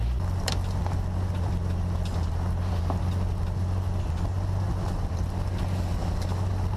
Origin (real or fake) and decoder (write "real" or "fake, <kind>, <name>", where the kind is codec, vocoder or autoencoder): real